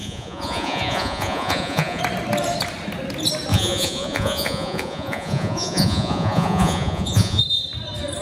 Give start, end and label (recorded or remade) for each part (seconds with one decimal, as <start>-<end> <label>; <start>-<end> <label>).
0.0-2.0 remade; 2.0-3.5 recorded; 3.5-7.4 remade; 7.4-8.2 recorded

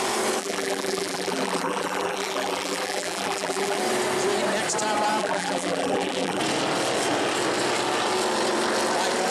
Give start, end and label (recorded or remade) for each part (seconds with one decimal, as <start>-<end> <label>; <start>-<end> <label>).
0.0-0.4 recorded; 0.4-3.8 remade; 3.8-5.2 recorded; 5.2-6.4 remade; 6.4-9.3 recorded

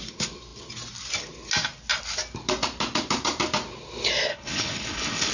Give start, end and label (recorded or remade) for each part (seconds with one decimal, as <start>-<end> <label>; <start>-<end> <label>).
0.0-4.3 recorded; 4.3-5.3 remade

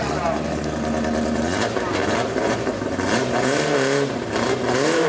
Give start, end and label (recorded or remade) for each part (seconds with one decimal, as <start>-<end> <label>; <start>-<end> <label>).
0.0-2.0 recorded; 2.0-5.1 remade

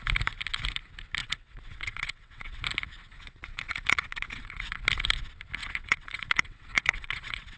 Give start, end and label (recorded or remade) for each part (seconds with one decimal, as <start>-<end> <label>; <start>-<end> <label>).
0.0-1.2 recorded; 1.2-2.6 remade; 2.6-3.1 recorded; 3.1-4.8 remade; 4.8-5.6 recorded; 5.6-7.6 remade